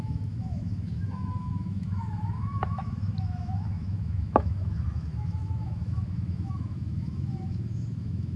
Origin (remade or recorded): remade